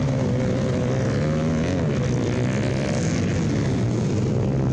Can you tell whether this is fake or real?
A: real